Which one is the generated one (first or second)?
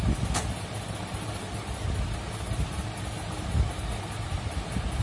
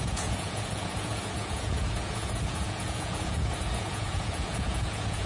second